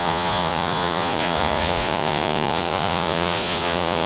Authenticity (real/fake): fake